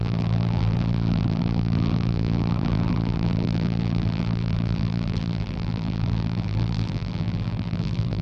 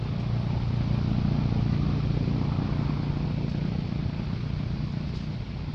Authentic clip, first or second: second